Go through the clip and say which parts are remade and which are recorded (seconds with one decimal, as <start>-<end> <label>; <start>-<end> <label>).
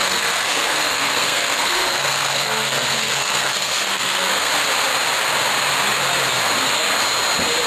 0.0-4.5 remade; 4.5-7.7 recorded